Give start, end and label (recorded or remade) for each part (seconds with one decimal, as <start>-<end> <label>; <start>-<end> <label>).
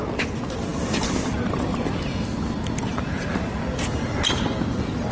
0.0-5.1 recorded